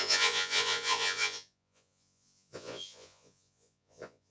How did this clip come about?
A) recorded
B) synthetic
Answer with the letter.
B